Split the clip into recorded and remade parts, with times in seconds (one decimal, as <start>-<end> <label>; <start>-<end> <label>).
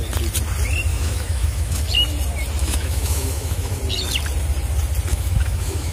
0.0-0.9 recorded; 0.9-1.8 remade; 1.8-2.6 recorded; 2.6-3.8 remade; 3.8-5.1 recorded; 5.1-5.9 remade